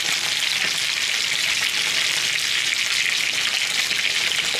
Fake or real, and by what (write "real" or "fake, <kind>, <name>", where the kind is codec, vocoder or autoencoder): real